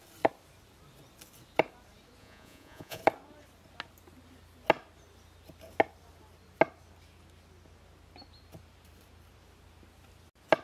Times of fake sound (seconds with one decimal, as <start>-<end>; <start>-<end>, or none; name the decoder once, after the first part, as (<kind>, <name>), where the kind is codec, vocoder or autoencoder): 2.2-3.0 (vocoder, Vocos)